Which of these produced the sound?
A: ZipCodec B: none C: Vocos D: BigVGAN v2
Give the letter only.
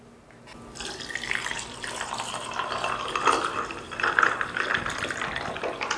B